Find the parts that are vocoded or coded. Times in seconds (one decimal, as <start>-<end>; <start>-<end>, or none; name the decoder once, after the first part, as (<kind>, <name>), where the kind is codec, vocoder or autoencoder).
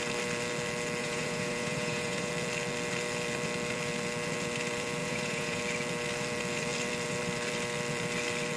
1.0-2.3 (vocoder, Vocos); 5.0-5.6